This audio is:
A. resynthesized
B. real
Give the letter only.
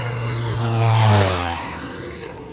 A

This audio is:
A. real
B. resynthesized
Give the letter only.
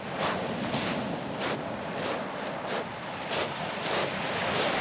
A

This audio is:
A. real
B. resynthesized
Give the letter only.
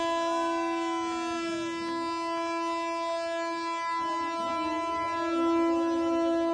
A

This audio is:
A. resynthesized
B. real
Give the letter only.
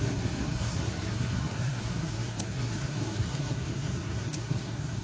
A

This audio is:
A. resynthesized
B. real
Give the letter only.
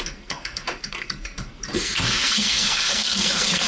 A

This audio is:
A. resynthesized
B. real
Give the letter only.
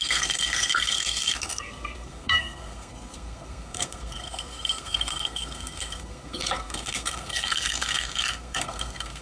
A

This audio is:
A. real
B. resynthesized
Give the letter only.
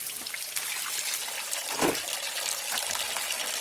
A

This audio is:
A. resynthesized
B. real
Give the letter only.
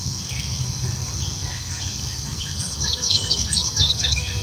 A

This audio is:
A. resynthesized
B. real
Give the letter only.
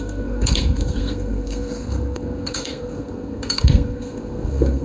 A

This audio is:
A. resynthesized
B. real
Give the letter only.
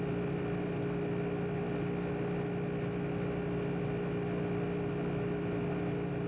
B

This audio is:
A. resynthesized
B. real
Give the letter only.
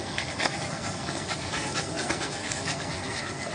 A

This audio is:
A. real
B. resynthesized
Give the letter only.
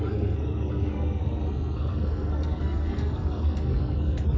B